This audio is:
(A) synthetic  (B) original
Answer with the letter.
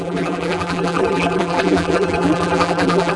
A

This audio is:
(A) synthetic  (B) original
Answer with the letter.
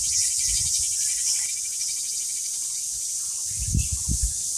A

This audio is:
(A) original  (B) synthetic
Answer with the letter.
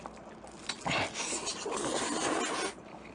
A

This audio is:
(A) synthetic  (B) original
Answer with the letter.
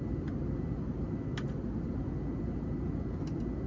B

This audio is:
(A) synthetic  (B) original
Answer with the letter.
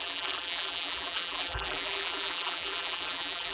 A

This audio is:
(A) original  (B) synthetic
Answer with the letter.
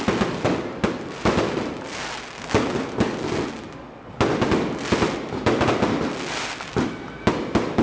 A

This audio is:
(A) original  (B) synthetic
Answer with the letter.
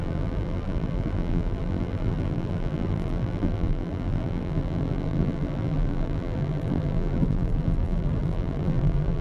B